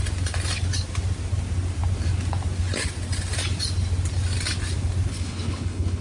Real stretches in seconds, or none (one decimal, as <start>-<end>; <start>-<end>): 0.0-5.1